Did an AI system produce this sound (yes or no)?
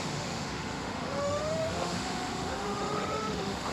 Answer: yes